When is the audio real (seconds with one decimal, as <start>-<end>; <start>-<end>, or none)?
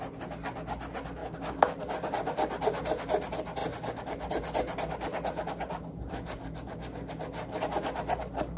0.0-1.2; 1.7-8.6